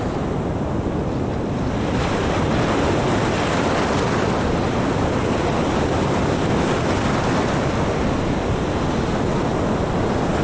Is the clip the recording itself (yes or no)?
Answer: yes